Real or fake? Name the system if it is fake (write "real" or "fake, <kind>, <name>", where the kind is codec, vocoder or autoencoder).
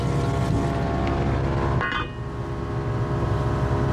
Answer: real